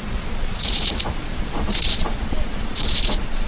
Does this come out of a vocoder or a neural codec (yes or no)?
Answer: yes